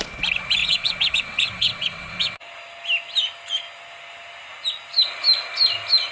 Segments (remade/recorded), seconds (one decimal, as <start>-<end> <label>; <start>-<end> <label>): 0.0-0.6 recorded; 0.6-2.5 remade; 2.5-6.1 recorded

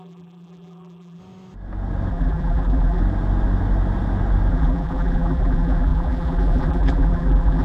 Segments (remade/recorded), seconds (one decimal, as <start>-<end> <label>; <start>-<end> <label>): 0.0-1.2 remade; 1.2-2.1 recorded; 2.1-3.0 remade; 3.0-4.5 recorded; 4.5-7.6 remade

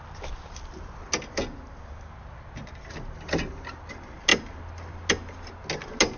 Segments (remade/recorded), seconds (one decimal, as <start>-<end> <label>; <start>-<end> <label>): 0.0-6.2 recorded

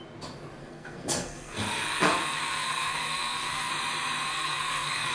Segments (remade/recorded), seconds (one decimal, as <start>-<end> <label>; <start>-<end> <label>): 0.0-0.6 recorded; 0.6-3.7 remade; 3.7-4.3 recorded; 4.3-5.1 remade

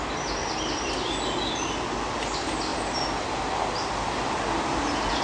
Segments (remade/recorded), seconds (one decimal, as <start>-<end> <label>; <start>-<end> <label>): 0.0-0.4 recorded; 0.4-1.8 remade; 1.8-5.2 recorded

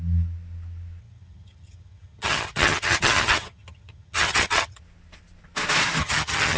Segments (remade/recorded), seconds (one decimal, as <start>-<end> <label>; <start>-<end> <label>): 0.0-1.0 recorded; 1.0-4.8 remade; 4.8-6.0 recorded; 6.0-6.6 remade